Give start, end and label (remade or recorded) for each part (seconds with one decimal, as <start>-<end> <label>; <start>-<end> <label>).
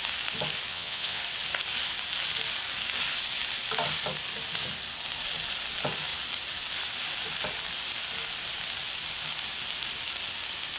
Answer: 0.0-0.7 recorded; 0.7-1.2 remade; 1.2-10.8 recorded